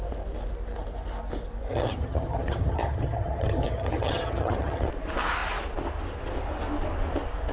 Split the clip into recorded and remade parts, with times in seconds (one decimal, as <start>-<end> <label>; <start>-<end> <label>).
0.0-1.7 recorded; 1.7-4.9 remade; 4.9-7.5 recorded